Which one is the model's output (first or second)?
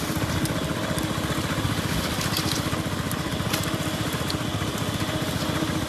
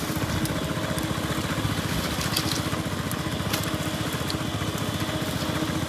first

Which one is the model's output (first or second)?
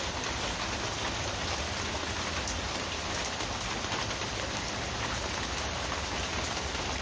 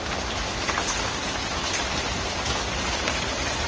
first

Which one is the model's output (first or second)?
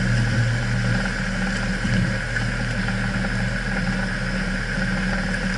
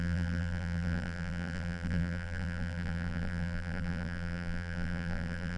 second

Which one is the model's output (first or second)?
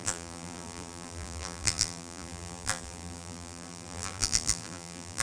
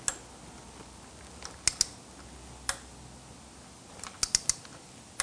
first